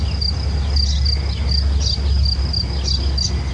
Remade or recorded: recorded